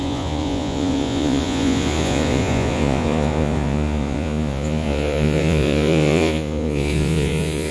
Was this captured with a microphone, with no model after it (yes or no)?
no